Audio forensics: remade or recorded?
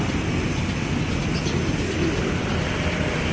recorded